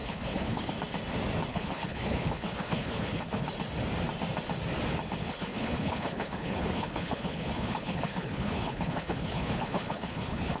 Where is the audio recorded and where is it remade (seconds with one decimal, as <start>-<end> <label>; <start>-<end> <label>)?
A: 0.0-0.7 remade; 0.7-1.5 recorded; 1.5-3.5 remade; 3.5-5.2 recorded; 5.2-10.6 remade